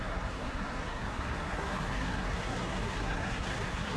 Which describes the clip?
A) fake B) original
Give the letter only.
A